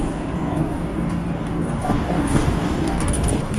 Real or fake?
fake